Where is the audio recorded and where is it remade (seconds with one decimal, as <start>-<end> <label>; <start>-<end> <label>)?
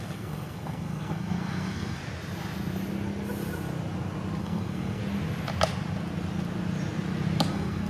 0.0-2.0 remade; 2.0-4.4 recorded; 4.4-5.0 remade; 5.0-7.5 recorded; 7.5-7.9 remade